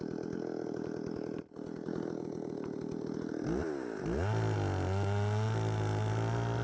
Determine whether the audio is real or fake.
real